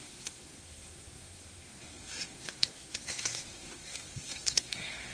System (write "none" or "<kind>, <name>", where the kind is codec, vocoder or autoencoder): codec, SNAC